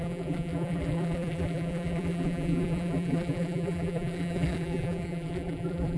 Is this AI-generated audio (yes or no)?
yes